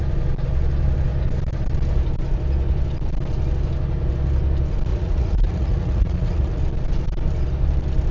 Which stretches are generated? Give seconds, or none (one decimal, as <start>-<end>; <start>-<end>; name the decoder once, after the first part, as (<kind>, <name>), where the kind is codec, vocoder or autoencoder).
4.9-6.6 (vocoder, Vocos)